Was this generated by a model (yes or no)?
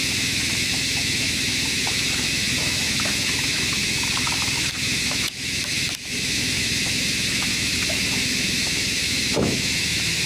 yes